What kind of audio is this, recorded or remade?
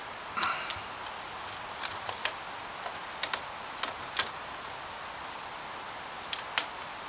recorded